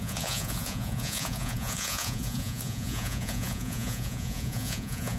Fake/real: fake